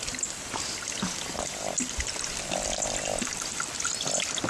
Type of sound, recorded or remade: recorded